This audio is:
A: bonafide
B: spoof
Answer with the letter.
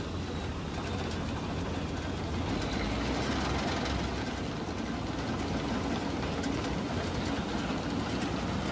A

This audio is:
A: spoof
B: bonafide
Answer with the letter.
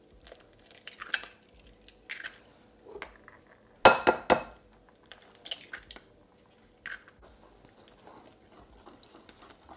B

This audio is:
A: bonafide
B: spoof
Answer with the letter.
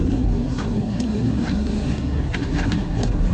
B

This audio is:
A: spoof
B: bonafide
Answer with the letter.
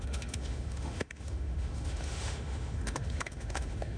A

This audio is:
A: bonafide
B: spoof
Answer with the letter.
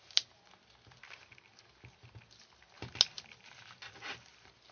A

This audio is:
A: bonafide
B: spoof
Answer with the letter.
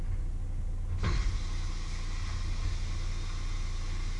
A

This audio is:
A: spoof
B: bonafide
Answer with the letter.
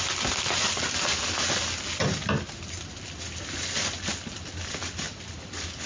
B